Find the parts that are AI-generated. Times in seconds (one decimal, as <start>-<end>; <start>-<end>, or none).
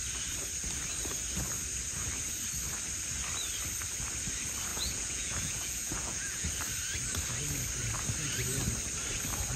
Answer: 4.7-6.6